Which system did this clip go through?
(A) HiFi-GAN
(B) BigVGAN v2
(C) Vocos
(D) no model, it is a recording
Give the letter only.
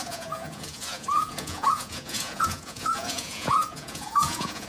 C